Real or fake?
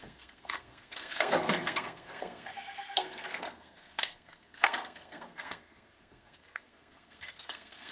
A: fake